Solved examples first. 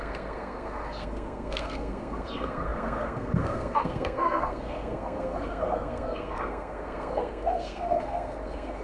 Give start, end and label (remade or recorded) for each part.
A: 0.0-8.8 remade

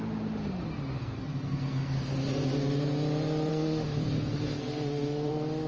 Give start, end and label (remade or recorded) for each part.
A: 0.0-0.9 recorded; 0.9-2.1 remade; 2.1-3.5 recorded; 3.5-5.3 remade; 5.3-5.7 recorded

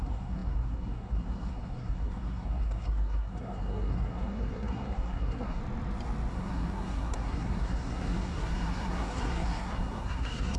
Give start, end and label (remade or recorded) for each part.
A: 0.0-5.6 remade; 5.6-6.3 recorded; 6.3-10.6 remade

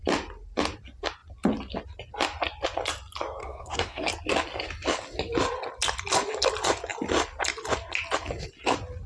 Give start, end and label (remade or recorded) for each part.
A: 0.0-3.4 recorded; 3.4-4.1 remade; 4.1-9.1 recorded

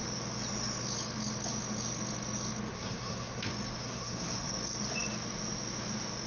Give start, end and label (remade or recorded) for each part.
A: 0.0-2.7 recorded; 2.7-3.4 remade; 3.4-3.8 recorded; 3.8-4.5 remade; 4.5-6.3 recorded

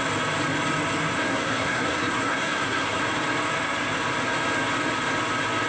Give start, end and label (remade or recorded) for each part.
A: 0.0-1.3 recorded; 1.3-3.0 remade; 3.0-5.7 recorded